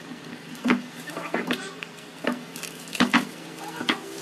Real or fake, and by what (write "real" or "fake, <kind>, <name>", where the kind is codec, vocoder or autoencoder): fake, codec, SNAC